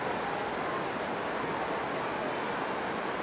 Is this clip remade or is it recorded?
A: recorded